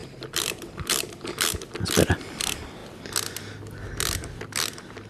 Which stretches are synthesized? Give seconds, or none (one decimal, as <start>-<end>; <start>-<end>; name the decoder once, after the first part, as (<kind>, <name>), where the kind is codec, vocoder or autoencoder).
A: 0.0-2.4 (vocoder, BigVGAN v2)